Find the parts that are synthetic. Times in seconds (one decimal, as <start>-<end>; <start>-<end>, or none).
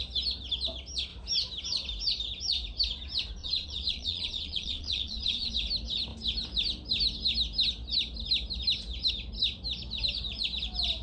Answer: 3.4-5.5